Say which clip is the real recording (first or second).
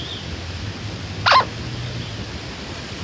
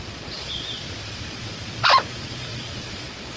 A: first